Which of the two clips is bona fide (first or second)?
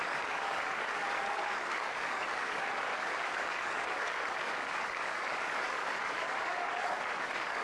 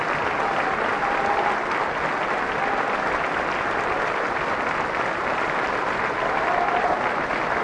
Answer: second